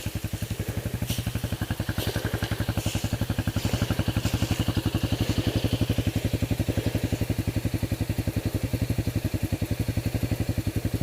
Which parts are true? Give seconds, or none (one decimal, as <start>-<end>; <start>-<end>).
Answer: 0.0-11.0